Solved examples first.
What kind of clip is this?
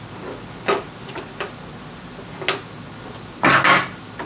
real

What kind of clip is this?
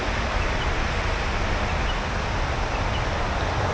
real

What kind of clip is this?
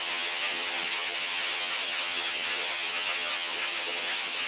fake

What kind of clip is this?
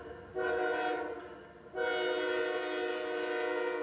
real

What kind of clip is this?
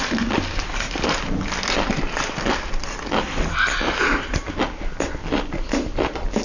real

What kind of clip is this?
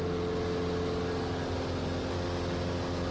real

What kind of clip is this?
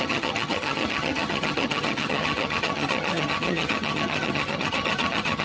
fake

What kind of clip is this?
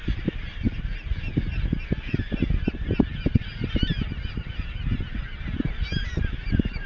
real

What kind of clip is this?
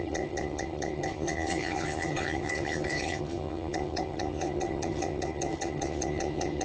fake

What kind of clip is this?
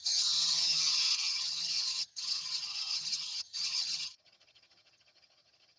fake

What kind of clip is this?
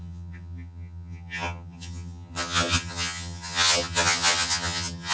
fake